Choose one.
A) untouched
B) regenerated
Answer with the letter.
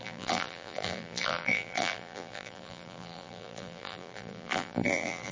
B